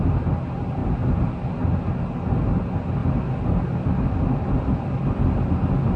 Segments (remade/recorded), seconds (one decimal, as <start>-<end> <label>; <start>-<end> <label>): 0.0-6.0 recorded

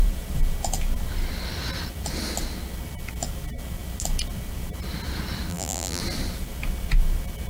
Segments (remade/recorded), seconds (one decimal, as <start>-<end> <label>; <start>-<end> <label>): 0.0-5.5 recorded; 5.5-6.0 remade; 6.0-7.5 recorded

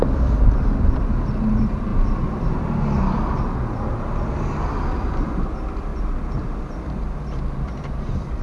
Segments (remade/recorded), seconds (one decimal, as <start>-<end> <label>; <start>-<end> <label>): 0.0-1.9 remade; 1.9-4.7 recorded; 4.7-8.4 remade